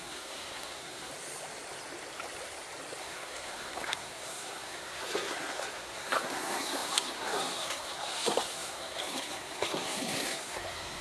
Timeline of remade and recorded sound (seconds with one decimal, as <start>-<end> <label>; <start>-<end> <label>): 0.0-1.1 remade; 1.1-3.0 recorded; 3.0-11.0 remade